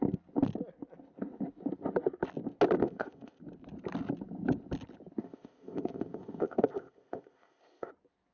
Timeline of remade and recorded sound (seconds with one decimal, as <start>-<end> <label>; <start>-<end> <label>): 0.0-2.8 recorded; 2.8-3.4 remade; 3.4-5.2 recorded; 5.2-7.9 remade; 7.9-8.3 recorded